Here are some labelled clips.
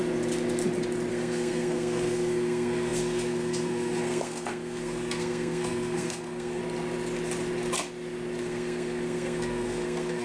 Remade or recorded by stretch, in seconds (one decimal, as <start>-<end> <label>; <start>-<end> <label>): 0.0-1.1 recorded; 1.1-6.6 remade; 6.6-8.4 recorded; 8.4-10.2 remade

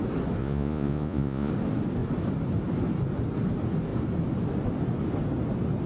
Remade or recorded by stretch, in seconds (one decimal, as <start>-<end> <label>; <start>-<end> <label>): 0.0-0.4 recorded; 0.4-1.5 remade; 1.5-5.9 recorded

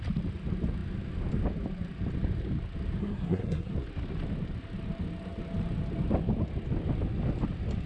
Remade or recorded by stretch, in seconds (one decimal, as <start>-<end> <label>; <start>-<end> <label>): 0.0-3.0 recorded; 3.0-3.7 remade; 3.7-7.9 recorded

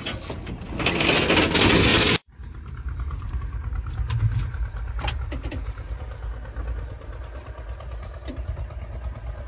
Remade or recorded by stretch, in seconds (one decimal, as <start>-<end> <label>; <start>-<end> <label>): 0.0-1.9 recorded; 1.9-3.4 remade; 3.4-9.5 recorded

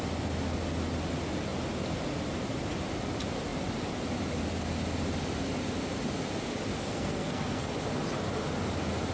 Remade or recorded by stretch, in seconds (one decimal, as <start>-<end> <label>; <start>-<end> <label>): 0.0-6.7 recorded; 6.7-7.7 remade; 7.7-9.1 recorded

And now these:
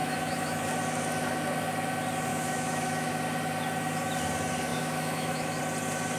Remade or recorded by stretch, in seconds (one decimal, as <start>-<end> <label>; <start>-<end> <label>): 0.0-0.6 remade; 0.6-2.3 recorded; 2.3-3.1 remade; 3.1-4.7 recorded; 4.7-5.6 remade; 5.6-6.2 recorded